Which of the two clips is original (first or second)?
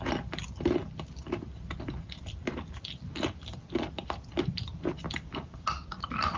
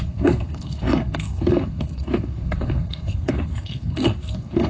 first